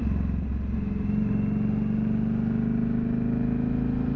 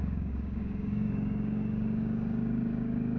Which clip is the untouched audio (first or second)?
first